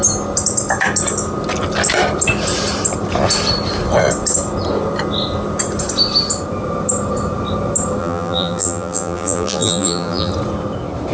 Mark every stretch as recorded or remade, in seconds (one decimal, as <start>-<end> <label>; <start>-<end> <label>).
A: 0.0-8.0 recorded; 8.0-10.3 remade; 10.3-11.1 recorded